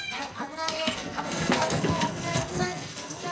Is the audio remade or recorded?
remade